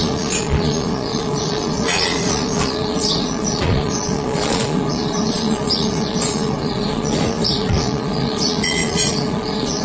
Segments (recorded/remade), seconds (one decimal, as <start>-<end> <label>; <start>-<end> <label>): 0.0-9.8 remade